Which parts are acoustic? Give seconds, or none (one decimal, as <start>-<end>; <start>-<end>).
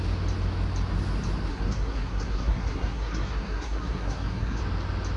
0.0-1.5; 4.6-5.2